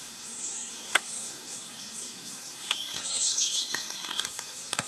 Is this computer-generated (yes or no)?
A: yes